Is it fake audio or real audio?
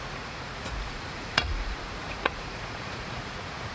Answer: fake